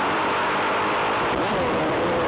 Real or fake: real